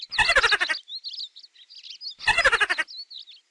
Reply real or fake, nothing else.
real